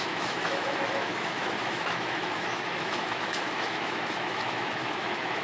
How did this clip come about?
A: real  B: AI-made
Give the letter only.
B